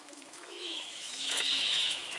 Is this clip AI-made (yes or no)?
yes